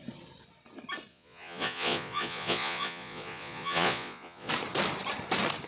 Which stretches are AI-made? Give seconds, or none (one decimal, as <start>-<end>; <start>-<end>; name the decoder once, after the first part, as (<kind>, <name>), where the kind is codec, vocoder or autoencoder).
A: 1.1-4.5 (vocoder, Vocos)